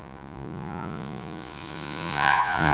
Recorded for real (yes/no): no